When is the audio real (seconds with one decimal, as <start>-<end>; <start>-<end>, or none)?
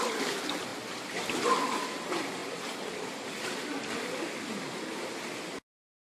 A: 0.0-6.1